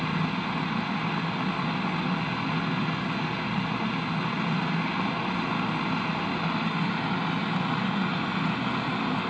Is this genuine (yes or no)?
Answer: yes